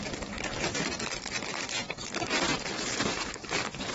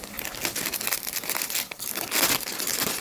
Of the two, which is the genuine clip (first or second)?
second